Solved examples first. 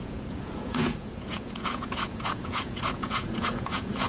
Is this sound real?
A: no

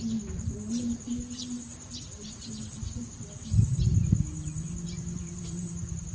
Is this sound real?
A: yes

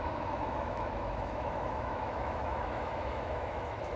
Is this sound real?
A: no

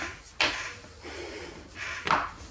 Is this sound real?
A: yes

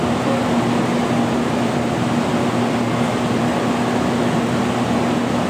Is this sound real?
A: yes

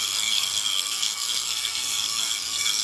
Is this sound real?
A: no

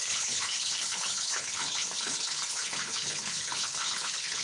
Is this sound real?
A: no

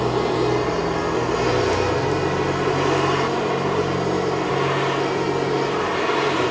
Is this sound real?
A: yes